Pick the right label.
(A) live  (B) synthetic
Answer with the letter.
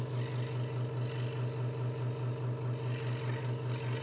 A